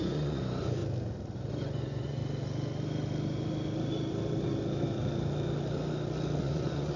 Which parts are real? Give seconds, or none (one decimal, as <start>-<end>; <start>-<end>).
0.8-1.5; 2.2-6.4